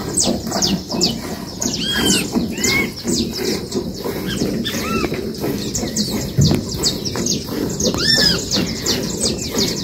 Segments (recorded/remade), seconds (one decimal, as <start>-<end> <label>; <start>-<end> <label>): 0.0-9.8 remade